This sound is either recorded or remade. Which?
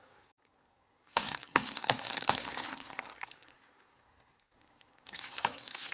remade